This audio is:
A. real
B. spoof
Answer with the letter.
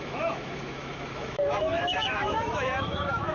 B